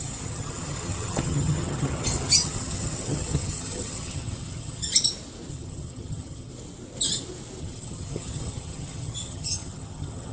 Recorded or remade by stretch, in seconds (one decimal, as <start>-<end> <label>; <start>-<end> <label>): 0.0-4.9 remade; 4.9-5.5 recorded; 5.5-6.5 remade; 6.5-7.6 recorded; 7.6-10.3 remade